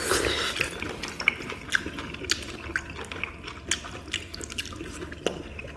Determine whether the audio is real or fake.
real